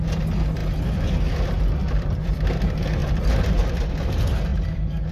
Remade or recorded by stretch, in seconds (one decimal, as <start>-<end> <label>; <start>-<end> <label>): 0.0-3.0 recorded; 3.0-3.9 remade; 3.9-4.5 recorded; 4.5-5.1 remade